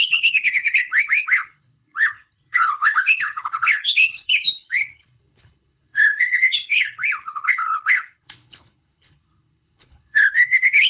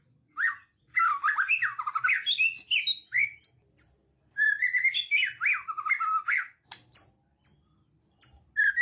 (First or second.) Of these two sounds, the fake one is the first